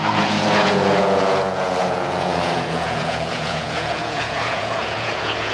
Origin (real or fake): fake